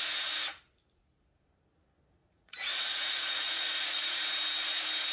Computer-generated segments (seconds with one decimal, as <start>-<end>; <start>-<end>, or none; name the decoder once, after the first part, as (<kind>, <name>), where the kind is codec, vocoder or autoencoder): 2.2-4.2 (vocoder, Vocos)